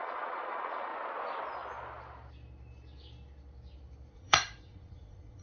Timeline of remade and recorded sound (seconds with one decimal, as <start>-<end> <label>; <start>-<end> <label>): 0.0-0.9 remade; 0.9-4.1 recorded; 4.1-5.4 remade